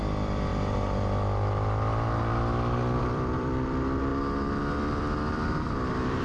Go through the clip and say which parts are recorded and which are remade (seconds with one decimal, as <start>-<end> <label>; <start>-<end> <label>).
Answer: 0.0-0.5 remade; 0.5-3.0 recorded; 3.0-4.1 remade; 4.1-5.0 recorded; 5.0-6.2 remade